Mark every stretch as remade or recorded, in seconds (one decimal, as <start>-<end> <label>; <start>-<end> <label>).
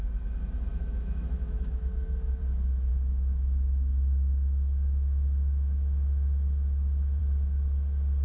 0.0-0.7 recorded; 0.7-2.4 remade; 2.4-2.9 recorded; 2.9-7.2 remade; 7.2-8.2 recorded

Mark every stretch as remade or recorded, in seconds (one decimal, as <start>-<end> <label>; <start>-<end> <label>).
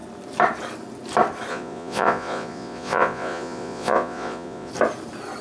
0.0-1.5 recorded; 1.5-4.7 remade; 4.7-5.4 recorded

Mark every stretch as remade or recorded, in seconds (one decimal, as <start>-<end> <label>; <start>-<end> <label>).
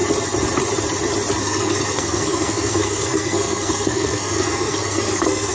0.0-1.4 recorded; 1.4-5.5 remade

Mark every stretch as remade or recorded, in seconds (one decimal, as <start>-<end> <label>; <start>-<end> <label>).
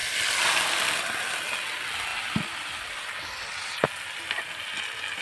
0.0-5.2 recorded